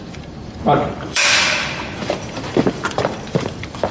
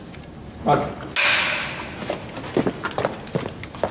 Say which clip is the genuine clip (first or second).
second